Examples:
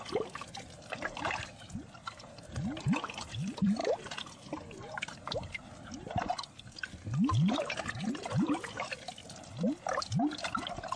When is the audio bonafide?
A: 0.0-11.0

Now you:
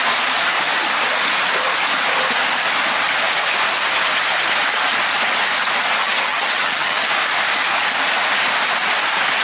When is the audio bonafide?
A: 0.0-6.0; 7.1-9.4

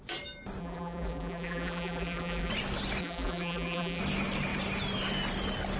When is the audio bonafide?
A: 0.0-0.6; 2.5-3.0; 4.0-5.8

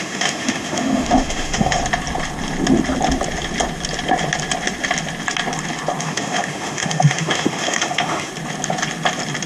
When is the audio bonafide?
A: 1.8-6.0; 8.3-9.5

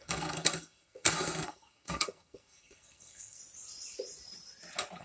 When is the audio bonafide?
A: 3.4-5.0

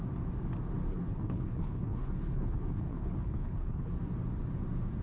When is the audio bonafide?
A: 0.0-0.9; 3.9-5.0